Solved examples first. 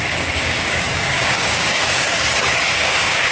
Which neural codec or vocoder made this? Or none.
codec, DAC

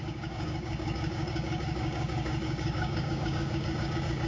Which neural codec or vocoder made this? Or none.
codec, DAC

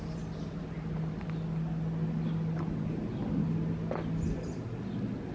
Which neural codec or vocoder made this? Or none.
none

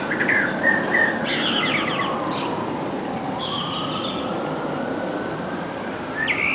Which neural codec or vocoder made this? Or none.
none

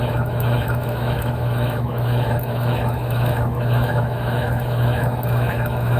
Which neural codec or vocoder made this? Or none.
autoencoder, DAC-VAE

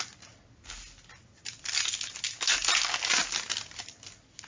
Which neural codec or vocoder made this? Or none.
none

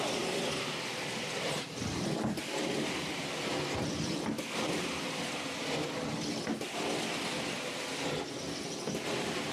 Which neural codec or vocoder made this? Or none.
none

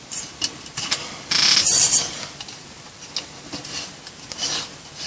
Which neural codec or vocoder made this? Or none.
none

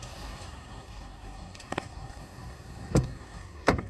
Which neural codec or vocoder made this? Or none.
codec, SNAC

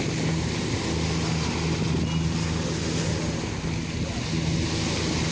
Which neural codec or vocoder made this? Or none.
none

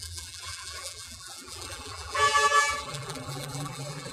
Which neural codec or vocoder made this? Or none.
vocoder, BigVGAN v2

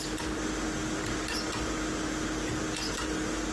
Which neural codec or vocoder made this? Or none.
none